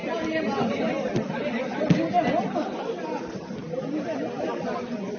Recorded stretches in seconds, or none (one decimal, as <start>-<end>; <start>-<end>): 0.0-5.2